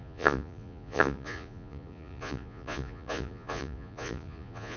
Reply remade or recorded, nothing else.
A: remade